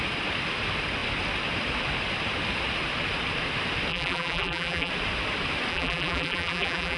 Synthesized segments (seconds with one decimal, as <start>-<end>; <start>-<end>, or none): 3.9-4.9; 5.7-7.0